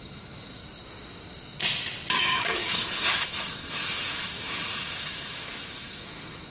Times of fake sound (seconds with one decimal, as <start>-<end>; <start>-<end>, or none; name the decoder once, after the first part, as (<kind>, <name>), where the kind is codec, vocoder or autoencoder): 0.0-0.6 (autoencoder, DAC-VAE); 2.2-6.5

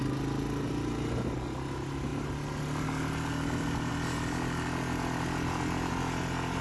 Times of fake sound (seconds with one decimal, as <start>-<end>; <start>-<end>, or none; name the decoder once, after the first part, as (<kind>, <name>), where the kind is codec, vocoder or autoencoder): none

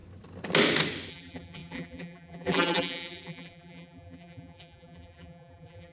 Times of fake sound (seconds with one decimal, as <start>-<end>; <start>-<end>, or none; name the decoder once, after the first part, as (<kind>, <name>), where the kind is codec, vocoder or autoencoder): 1.1-5.9 (vocoder, BigVGAN v2)

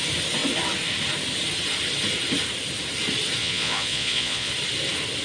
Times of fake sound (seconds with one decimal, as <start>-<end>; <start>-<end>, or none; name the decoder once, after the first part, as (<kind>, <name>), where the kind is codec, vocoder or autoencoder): 3.4-4.5 (vocoder, Vocos)

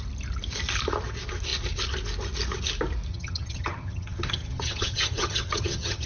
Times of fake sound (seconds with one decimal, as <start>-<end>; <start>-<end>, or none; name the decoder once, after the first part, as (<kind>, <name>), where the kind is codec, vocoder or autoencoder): 3.1-6.1 (vocoder, HiFi-GAN)

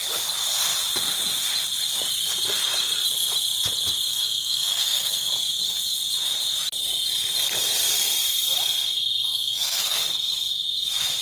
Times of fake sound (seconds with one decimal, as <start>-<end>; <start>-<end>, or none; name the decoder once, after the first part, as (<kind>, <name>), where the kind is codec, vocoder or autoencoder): 4.1-5.3 (codec, SNAC); 9.3-10.0

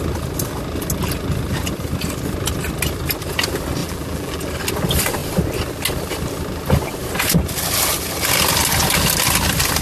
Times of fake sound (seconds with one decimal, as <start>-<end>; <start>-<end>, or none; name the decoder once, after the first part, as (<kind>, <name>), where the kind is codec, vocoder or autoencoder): 3.8-4.4 (vocoder, BigVGAN v2)

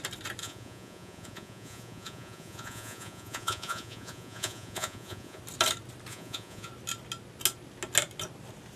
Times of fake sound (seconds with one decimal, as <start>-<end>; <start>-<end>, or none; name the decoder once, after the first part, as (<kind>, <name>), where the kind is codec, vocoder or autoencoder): 0.4-5.4 (vocoder, Vocos); 6.1-6.7